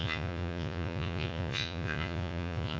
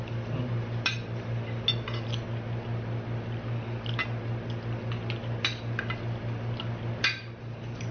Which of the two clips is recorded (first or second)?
second